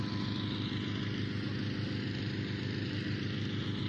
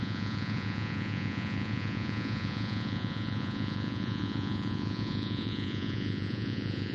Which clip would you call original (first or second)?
first